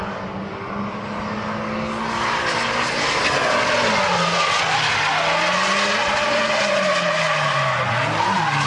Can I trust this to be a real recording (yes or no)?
yes